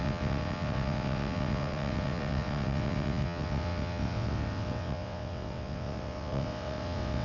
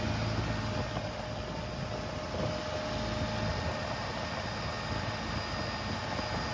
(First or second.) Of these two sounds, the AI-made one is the first